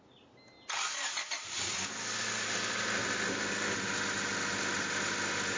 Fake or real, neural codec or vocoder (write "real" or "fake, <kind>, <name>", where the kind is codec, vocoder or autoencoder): real